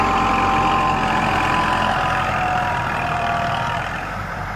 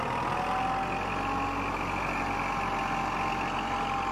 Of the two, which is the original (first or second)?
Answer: second